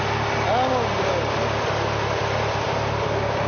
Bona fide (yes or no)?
yes